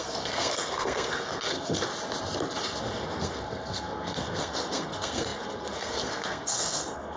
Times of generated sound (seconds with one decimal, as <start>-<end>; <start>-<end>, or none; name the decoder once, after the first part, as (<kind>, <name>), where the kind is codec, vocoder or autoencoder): 0.0-1.9 (codec, SNAC); 2.8-7.2